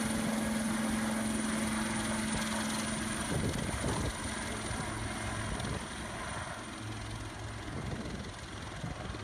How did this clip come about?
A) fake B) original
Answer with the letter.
B